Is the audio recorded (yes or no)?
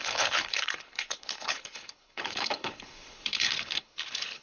no